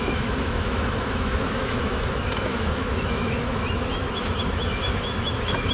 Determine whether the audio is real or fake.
fake